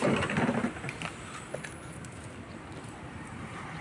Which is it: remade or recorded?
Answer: remade